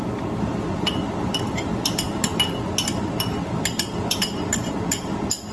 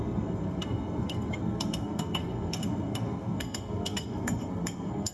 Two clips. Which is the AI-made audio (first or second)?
second